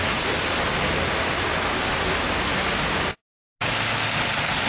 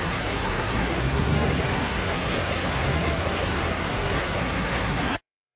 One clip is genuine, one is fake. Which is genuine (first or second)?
first